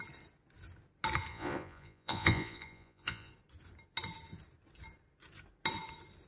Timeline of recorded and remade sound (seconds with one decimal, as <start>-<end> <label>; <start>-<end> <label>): 0.0-1.3 recorded; 1.3-3.3 remade; 3.3-6.3 recorded